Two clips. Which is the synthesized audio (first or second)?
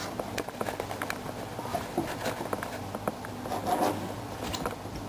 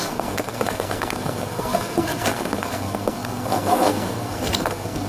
second